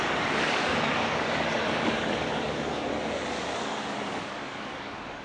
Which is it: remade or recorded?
remade